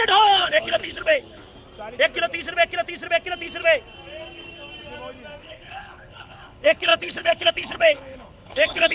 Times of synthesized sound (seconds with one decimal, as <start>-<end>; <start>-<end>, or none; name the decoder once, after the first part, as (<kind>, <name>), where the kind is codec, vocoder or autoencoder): 0.0-1.5 (codec, HILCodec); 5.4-8.9